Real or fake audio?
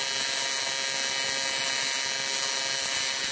real